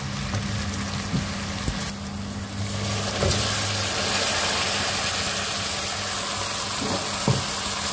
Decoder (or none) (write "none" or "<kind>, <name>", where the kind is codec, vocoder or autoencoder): none